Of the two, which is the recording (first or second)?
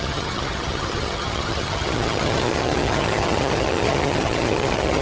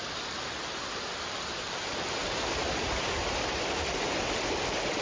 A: second